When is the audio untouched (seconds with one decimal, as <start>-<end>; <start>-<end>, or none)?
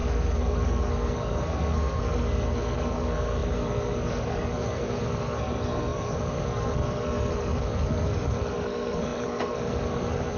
none